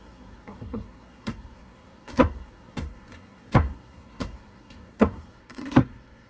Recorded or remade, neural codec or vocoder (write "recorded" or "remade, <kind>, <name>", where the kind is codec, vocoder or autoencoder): remade, codec, SNAC